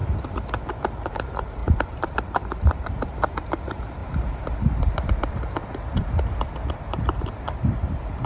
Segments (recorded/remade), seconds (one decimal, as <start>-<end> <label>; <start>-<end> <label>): 0.0-1.1 recorded; 1.1-5.6 remade; 5.6-6.7 recorded; 6.7-8.3 remade